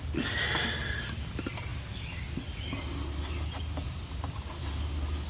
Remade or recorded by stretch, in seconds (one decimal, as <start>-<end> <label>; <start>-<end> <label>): 0.0-5.3 recorded